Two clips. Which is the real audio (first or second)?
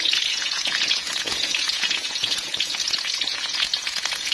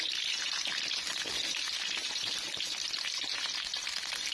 second